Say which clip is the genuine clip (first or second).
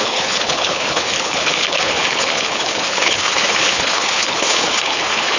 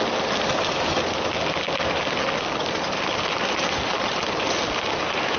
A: second